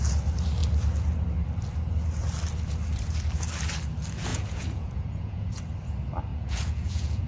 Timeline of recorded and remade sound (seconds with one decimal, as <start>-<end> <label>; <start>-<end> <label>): 0.0-4.3 recorded; 4.3-5.6 remade; 5.6-6.3 recorded; 6.3-7.3 remade